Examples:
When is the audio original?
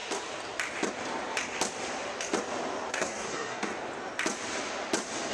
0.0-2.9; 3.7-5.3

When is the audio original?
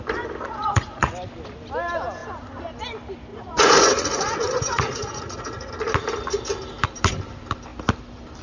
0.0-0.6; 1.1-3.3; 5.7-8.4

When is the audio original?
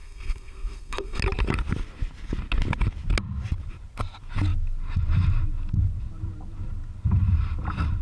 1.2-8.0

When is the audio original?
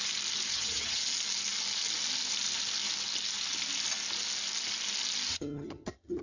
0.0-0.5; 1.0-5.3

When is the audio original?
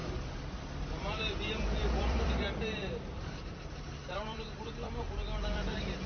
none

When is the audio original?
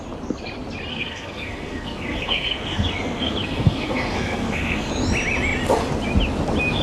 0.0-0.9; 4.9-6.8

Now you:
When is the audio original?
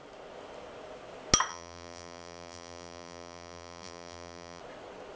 0.0-1.5; 4.6-5.2